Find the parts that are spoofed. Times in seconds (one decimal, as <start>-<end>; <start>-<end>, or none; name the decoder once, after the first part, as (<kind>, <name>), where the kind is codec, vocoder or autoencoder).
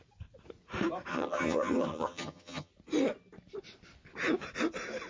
1.1-2.7 (vocoder, HiFi-GAN)